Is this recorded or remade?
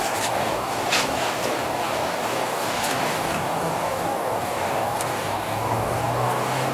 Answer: remade